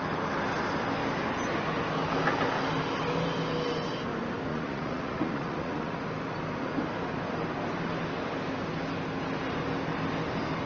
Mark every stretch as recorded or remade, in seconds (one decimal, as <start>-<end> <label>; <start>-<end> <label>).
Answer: 0.0-4.5 recorded; 4.5-6.0 remade; 6.0-10.7 recorded